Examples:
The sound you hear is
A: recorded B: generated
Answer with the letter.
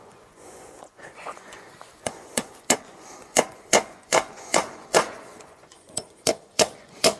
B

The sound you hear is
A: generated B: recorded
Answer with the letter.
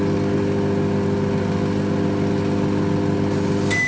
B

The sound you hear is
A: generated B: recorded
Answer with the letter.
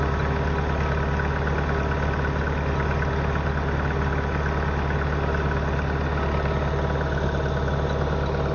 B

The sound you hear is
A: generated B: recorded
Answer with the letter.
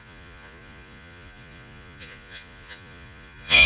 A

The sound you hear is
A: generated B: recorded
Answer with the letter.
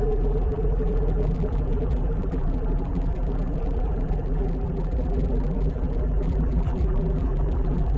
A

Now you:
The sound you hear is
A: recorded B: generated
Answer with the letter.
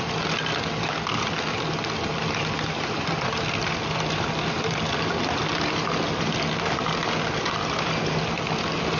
A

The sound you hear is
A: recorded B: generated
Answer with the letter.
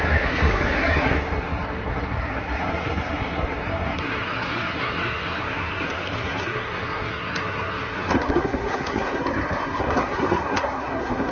B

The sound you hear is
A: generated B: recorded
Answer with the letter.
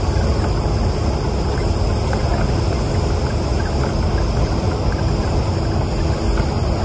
B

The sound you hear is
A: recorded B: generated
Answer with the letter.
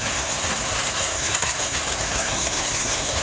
B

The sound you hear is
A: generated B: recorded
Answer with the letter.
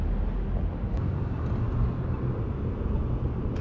B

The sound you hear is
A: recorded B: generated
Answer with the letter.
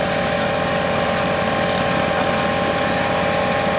A